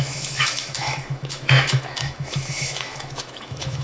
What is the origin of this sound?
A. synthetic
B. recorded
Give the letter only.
A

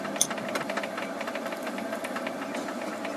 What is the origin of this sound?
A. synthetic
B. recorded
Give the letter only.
B